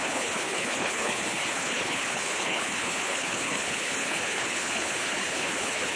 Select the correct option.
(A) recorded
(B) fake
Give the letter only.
B